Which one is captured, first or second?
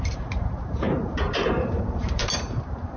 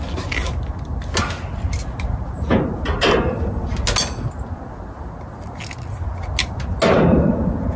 second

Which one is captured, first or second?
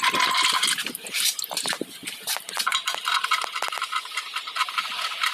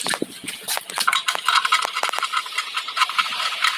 first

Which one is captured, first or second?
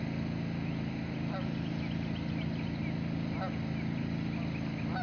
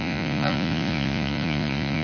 first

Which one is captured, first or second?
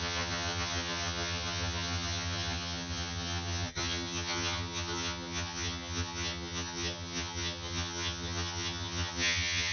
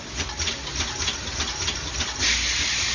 second